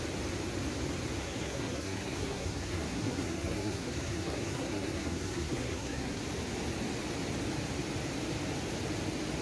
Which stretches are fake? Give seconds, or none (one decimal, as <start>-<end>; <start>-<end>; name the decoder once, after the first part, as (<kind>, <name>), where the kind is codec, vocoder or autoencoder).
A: 1.2-6.2 (codec, SNAC)